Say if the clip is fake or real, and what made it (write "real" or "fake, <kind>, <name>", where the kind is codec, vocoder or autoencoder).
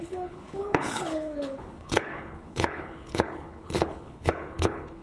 fake, codec, HILCodec